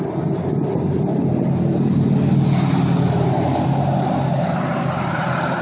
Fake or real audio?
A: real